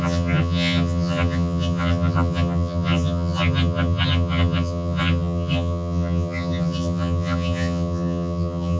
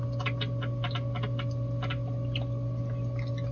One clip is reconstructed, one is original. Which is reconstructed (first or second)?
first